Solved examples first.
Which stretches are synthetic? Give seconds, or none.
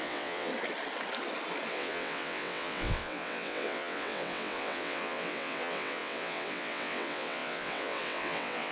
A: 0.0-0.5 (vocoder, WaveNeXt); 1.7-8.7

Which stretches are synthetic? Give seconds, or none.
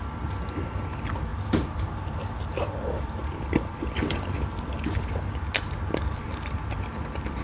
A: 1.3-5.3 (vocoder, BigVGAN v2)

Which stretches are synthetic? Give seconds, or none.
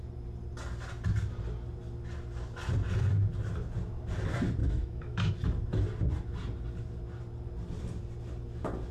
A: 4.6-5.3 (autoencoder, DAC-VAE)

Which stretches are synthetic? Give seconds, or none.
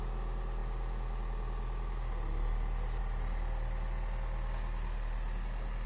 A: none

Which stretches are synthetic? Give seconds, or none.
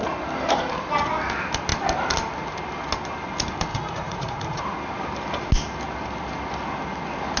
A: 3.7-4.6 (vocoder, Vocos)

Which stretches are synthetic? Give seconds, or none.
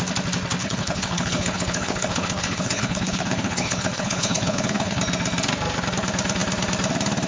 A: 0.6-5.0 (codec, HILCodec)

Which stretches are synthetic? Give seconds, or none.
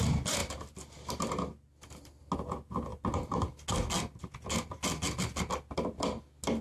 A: none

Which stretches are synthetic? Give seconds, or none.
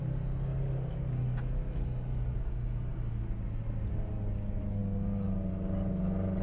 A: none